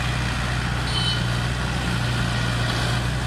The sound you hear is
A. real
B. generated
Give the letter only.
A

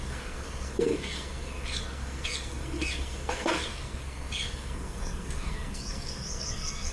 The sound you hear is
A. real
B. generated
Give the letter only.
B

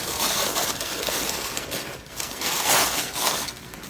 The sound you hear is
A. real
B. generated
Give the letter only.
B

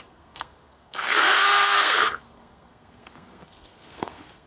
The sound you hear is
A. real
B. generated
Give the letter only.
B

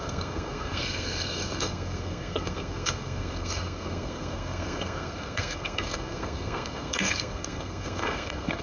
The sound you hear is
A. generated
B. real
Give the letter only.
A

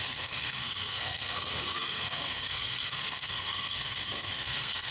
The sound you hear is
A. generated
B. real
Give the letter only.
A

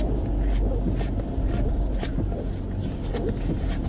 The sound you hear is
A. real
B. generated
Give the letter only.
A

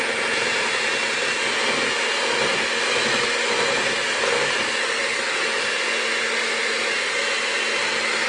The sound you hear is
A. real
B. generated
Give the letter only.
A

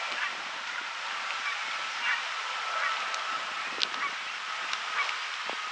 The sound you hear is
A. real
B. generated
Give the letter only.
A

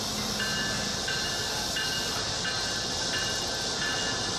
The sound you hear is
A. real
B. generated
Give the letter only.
A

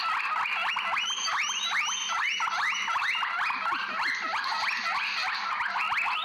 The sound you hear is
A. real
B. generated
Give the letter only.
A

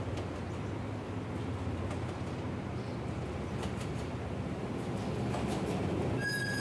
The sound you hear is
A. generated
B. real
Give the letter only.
B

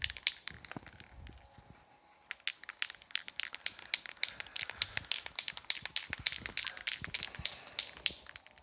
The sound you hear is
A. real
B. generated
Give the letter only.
A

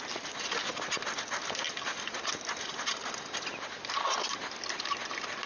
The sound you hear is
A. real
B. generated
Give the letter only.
A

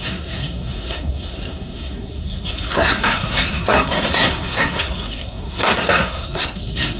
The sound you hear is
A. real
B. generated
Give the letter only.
B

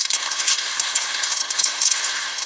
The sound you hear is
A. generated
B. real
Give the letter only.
A